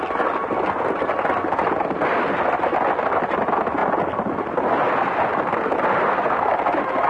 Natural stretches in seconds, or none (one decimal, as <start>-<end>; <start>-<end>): 0.0-7.1

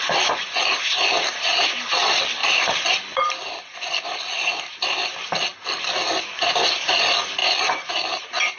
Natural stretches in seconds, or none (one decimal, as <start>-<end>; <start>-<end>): 0.0-2.4; 4.8-7.4

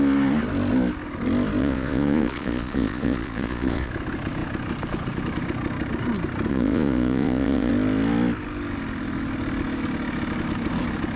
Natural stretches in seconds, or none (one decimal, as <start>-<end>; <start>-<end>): 0.0-1.6; 3.9-6.5; 7.7-11.2

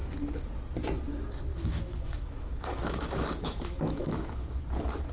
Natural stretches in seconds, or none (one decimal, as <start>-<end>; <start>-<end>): 0.0-1.5; 4.6-5.1